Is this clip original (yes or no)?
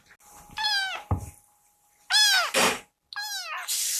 yes